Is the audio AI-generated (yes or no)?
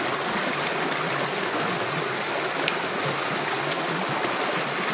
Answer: no